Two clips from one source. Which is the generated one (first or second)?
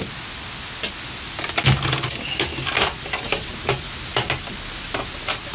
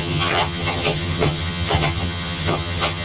second